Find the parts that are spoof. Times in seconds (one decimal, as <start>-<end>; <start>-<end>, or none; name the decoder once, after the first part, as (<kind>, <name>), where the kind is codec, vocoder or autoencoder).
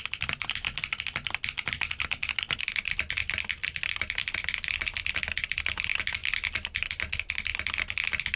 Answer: none